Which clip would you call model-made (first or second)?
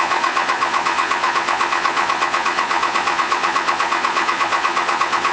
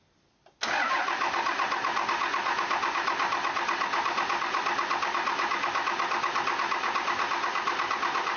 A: first